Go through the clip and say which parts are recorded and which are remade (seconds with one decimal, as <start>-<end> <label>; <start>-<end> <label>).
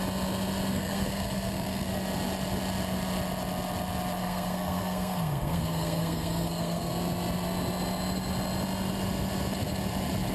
0.0-0.7 recorded; 0.7-1.9 remade; 1.9-4.2 recorded; 4.2-6.9 remade; 6.9-10.3 recorded